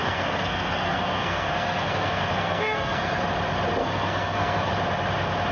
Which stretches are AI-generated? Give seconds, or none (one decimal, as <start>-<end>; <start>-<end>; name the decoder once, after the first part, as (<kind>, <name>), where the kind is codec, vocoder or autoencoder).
0.0-3.2 (codec, SNAC); 3.8-4.7